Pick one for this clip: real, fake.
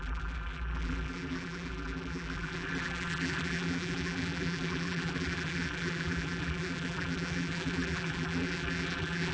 fake